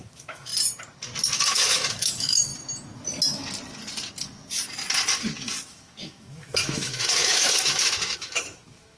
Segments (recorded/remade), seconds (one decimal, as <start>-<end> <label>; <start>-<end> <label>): 0.0-0.5 remade; 0.5-1.5 recorded; 1.5-2.5 remade; 2.5-5.7 recorded; 5.7-9.0 remade